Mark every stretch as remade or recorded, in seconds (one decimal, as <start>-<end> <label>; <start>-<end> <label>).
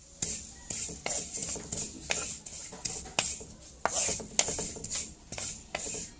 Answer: 0.0-6.2 recorded